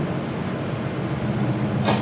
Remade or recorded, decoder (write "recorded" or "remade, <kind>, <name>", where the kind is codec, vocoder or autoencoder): recorded